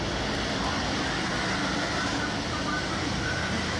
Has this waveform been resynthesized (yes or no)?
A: no